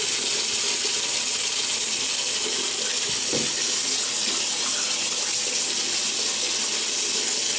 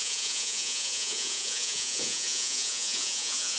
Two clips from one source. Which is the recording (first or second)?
first